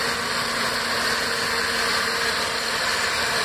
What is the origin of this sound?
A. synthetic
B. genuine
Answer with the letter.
B